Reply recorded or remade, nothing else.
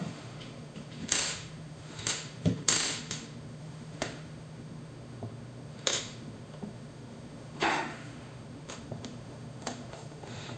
remade